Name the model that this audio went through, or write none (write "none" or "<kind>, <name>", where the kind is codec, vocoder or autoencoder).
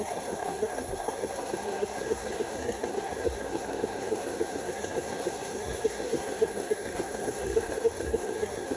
codec, SNAC